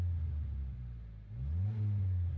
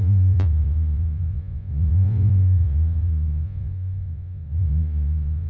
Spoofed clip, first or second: second